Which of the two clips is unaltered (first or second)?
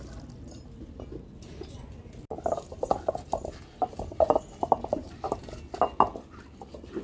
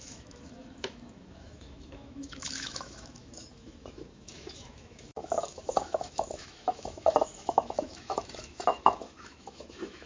first